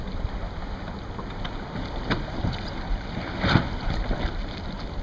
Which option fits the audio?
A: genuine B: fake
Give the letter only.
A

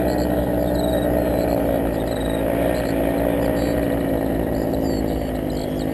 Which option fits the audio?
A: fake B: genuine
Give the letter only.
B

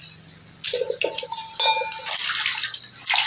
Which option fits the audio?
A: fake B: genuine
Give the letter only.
B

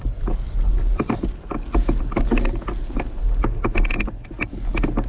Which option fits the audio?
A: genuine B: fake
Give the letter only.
A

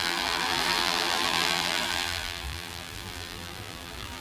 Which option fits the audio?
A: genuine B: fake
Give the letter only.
B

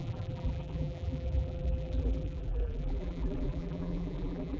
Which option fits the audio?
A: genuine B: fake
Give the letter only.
B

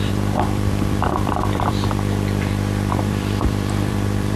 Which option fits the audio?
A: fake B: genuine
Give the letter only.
A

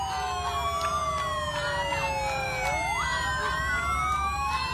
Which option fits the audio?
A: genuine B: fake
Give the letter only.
A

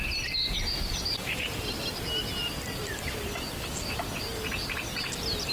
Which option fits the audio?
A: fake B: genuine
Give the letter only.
B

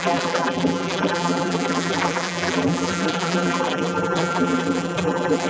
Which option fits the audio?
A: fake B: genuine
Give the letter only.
A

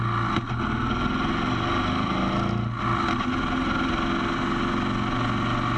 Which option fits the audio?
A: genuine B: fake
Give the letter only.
A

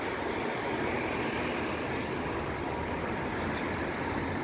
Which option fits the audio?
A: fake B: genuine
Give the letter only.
B